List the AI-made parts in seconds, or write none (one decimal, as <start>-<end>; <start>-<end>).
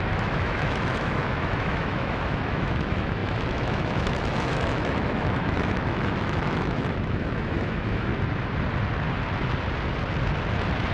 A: 0.0-8.1